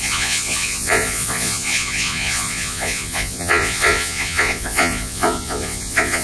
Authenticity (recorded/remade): remade